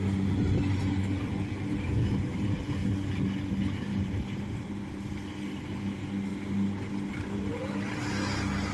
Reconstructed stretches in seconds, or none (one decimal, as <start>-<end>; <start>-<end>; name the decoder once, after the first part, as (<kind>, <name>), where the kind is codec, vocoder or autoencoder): 3.9-4.7 (vocoder, BigVGAN v2)